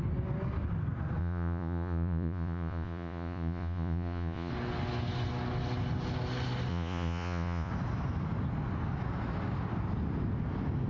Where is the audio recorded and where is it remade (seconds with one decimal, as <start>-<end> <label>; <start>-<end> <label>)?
0.0-1.2 recorded; 1.2-4.5 remade; 4.5-6.7 recorded; 6.7-7.7 remade; 7.7-10.9 recorded